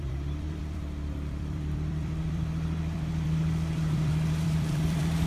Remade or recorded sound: remade